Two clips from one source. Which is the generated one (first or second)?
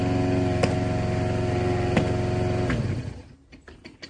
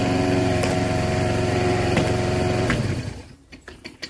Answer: second